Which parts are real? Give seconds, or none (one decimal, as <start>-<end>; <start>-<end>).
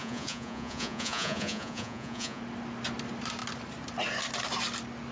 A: 2.4-5.1